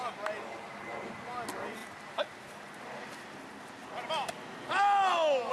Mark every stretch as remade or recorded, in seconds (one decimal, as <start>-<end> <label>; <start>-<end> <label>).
0.0-5.5 recorded